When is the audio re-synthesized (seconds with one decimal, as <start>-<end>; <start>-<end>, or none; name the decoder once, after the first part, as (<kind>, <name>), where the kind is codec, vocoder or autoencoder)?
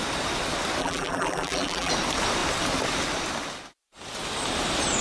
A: 0.8-1.9 (vocoder, BigVGAN v2)